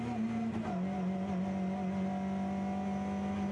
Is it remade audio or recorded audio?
recorded